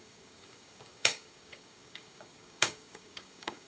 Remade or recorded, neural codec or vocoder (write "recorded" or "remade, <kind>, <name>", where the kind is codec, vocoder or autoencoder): remade, codec, DAC